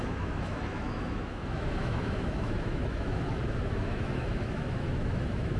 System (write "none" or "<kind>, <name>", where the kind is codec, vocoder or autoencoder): autoencoder, DAC-VAE